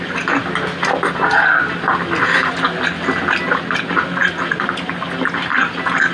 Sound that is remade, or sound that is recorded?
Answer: recorded